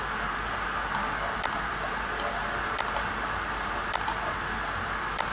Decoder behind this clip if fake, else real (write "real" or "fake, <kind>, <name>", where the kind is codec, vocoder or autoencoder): real